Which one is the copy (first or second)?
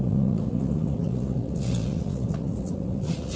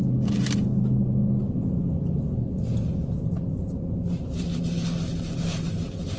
first